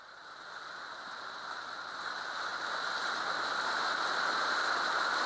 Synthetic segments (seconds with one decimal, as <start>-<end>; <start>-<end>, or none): 2.5-3.3